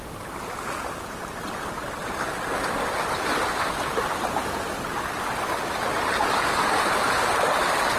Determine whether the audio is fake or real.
real